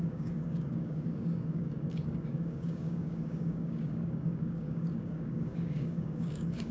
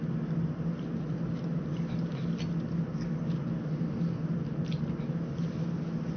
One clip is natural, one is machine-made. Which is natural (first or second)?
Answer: second